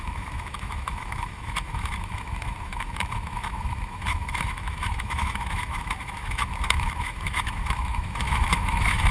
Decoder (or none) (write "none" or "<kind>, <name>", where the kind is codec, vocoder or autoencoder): autoencoder, DAC-VAE